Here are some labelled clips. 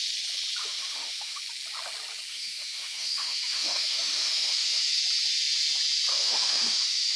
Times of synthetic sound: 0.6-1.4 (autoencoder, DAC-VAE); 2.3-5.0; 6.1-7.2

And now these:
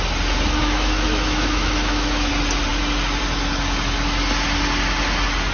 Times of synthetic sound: 0.6-2.3 (autoencoder, DAC-VAE)

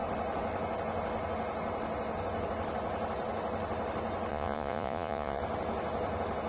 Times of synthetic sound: 4.3-5.4 (vocoder, Vocos)

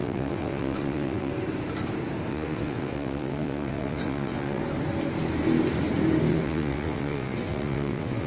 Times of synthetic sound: 0.0-1.3 (vocoder, WaveNeXt); 2.3-4.6; 6.3-8.3

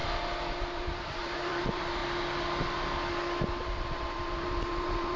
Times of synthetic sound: 0.5-2.0 (vocoder, BigVGAN v2); 3.6-5.2